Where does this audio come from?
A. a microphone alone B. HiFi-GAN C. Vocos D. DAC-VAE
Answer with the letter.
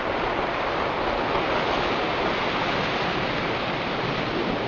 A